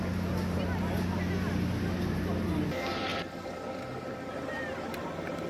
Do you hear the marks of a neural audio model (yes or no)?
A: no